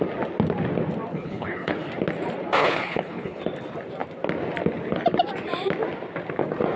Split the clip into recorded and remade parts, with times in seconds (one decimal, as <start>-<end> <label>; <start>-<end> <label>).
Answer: 0.0-1.1 recorded; 1.1-1.9 remade; 1.9-2.6 recorded; 2.6-3.4 remade; 3.4-6.8 recorded